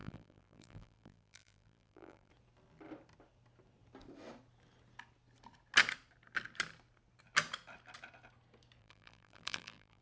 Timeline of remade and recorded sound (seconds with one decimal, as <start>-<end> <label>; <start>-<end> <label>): 0.0-2.3 remade; 2.3-8.8 recorded; 8.8-10.0 remade